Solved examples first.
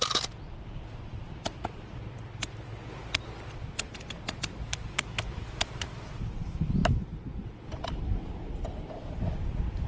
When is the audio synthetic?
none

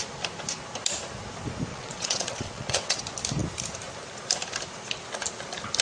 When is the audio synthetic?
1.7-3.0 (vocoder, WaveNeXt)

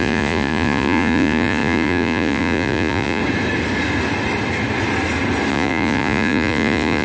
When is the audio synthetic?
0.0-3.2 (vocoder, Vocos); 5.5-7.0